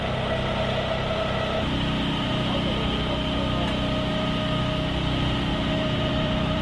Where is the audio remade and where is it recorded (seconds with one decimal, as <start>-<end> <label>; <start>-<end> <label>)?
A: 0.0-5.5 recorded; 5.5-6.6 remade